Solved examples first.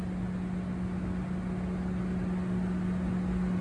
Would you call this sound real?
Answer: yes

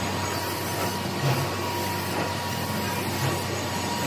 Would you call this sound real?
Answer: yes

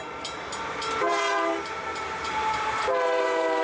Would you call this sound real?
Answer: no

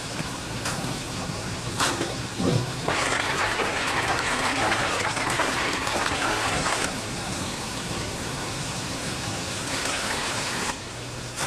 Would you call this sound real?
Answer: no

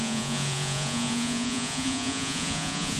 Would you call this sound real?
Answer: no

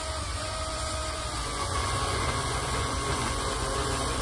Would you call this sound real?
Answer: no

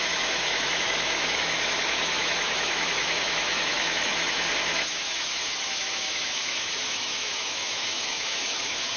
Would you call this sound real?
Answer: no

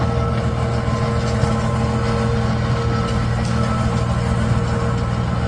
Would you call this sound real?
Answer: yes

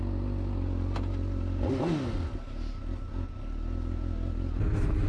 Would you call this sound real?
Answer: yes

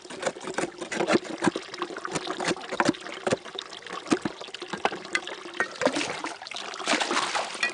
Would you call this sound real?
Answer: yes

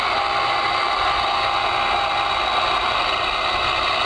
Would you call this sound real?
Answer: yes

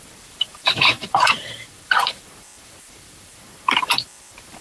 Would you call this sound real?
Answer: no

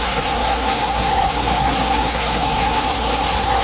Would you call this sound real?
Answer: no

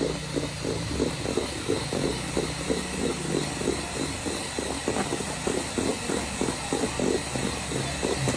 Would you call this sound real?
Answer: yes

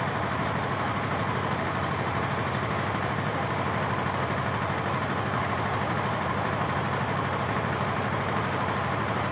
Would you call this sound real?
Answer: no